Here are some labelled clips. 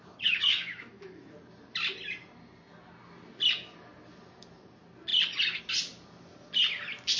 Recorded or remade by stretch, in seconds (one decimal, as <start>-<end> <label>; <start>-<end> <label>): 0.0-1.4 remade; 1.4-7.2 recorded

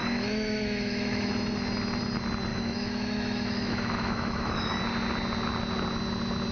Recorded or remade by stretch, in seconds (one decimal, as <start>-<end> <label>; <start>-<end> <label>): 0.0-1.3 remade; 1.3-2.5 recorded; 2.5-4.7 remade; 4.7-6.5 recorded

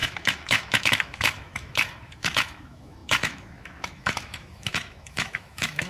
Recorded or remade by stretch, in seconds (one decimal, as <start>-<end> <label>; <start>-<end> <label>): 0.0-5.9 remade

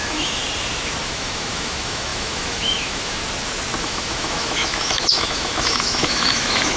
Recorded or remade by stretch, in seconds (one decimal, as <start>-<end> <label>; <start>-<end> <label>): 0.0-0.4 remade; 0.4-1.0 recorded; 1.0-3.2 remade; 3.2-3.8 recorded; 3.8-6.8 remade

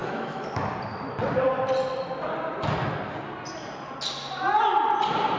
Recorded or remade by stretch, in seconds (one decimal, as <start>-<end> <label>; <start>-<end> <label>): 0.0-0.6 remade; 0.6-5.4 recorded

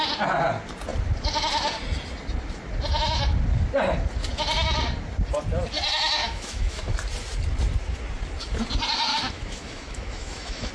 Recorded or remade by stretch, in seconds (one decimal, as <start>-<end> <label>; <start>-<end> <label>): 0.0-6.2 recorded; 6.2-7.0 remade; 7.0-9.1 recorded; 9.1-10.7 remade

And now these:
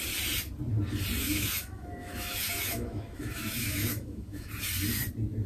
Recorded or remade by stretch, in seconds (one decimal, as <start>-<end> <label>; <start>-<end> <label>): 0.0-1.2 recorded; 1.2-4.5 remade; 4.5-5.5 recorded

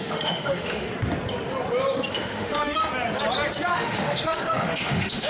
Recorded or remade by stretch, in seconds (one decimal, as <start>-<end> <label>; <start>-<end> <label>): 0.0-0.9 remade; 0.9-2.1 recorded; 2.1-2.9 remade; 2.9-3.7 recorded; 3.7-5.3 remade